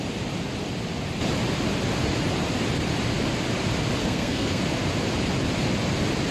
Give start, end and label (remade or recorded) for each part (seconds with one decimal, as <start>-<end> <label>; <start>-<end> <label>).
0.0-4.0 recorded; 4.0-4.6 remade; 4.6-6.3 recorded

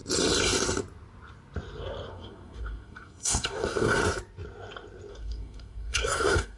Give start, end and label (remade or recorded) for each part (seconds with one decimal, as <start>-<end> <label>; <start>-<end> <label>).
0.0-2.1 recorded; 2.1-4.0 remade; 4.0-5.1 recorded; 5.1-6.6 remade

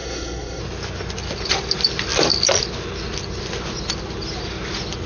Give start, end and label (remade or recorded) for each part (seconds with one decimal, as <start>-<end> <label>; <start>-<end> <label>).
0.0-0.6 remade; 0.6-5.1 recorded

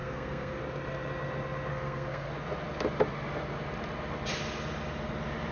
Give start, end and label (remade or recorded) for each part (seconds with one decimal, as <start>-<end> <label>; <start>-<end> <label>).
0.0-0.6 remade; 0.6-1.7 recorded; 1.7-2.3 remade; 2.3-5.5 recorded